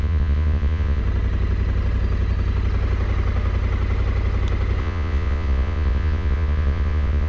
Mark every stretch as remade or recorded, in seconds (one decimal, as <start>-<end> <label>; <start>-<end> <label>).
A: 0.0-1.0 remade; 1.0-4.8 recorded; 4.8-7.3 remade